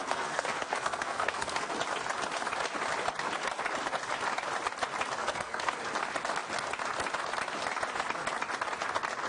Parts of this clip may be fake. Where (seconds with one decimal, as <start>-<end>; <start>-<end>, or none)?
0.0-1.7; 5.2-5.8